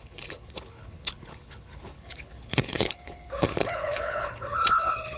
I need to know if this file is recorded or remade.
remade